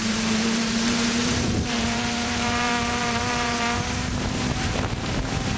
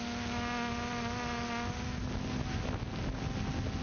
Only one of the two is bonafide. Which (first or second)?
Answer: second